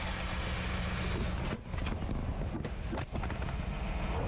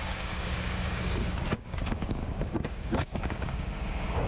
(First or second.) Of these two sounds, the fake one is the second